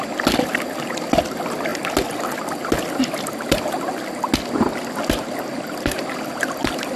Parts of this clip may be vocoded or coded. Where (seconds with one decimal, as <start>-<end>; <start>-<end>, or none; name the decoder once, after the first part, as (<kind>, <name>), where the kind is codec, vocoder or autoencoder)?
none